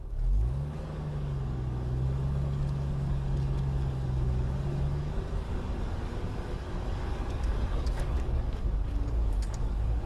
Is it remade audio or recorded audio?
remade